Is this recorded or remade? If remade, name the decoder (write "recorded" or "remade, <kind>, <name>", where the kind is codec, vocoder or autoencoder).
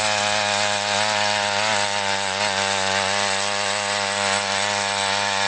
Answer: recorded